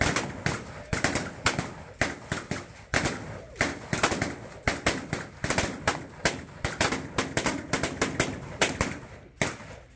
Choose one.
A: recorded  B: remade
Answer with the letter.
A